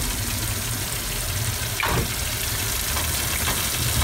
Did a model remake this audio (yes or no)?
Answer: no